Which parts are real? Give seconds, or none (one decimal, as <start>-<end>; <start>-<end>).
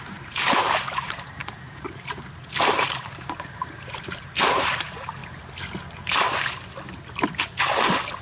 5.2-8.2